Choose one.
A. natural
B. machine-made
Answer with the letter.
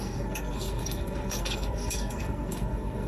B